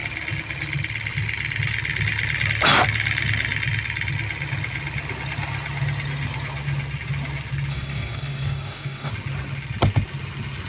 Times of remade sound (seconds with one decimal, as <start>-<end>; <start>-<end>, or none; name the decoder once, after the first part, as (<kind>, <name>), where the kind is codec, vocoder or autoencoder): 7.7-9.1 (codec, DAC)